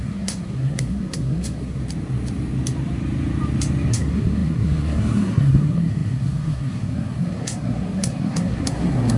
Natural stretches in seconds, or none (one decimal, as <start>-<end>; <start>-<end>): 1.8-3.9